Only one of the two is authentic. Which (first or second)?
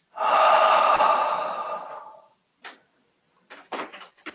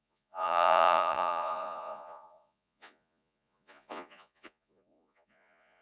first